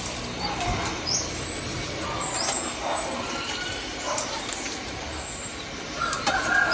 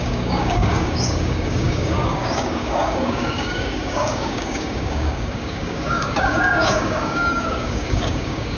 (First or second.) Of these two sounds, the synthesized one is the second